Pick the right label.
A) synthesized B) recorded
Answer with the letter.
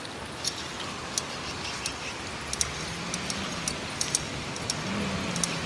B